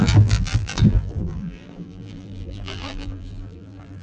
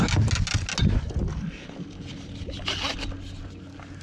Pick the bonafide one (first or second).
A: second